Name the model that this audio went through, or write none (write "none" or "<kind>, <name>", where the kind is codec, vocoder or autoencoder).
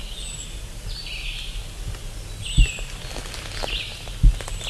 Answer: none